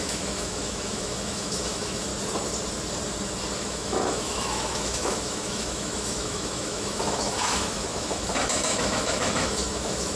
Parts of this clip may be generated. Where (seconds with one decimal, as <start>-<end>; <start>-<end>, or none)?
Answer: 0.0-2.1; 3.6-10.2